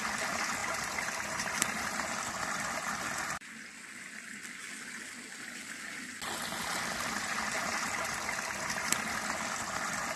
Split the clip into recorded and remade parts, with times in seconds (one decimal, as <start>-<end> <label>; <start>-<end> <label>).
0.0-0.6 recorded; 0.6-2.1 remade; 2.1-10.2 recorded